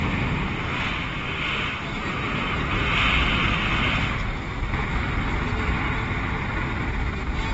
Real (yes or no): yes